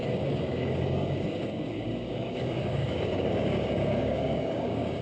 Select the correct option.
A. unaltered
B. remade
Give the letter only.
B